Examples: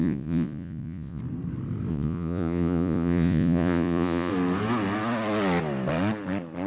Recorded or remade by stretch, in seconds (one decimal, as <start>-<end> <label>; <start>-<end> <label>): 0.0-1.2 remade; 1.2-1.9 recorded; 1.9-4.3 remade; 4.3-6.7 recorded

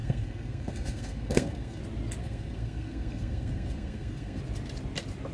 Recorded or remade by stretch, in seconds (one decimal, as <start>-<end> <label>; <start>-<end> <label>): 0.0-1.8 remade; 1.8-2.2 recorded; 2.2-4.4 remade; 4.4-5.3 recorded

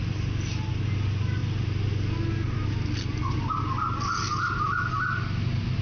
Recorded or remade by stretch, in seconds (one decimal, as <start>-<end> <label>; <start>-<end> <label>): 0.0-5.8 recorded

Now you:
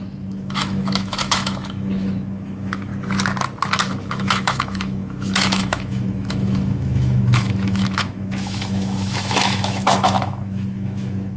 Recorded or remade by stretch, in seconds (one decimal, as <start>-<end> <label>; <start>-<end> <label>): 0.0-2.9 remade; 2.9-3.9 recorded; 3.9-11.4 remade

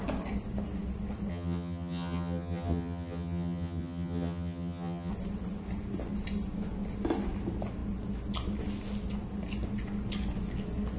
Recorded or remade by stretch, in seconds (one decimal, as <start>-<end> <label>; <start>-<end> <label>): 0.0-1.3 recorded; 1.3-5.1 remade; 5.1-11.0 recorded

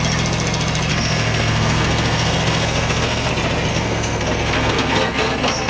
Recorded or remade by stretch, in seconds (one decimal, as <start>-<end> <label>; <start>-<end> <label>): 0.0-0.9 recorded; 0.9-3.3 remade; 3.3-3.7 recorded; 3.7-5.7 remade

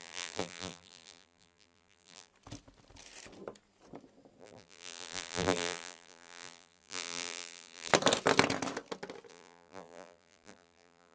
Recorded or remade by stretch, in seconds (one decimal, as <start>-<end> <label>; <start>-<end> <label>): 0.0-2.3 remade; 2.3-4.4 recorded; 4.4-7.9 remade; 7.9-9.3 recorded; 9.3-11.1 remade